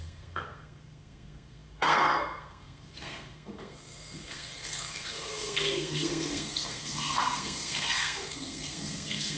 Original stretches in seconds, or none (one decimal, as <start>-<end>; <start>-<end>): none